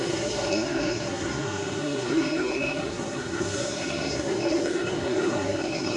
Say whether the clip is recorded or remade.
remade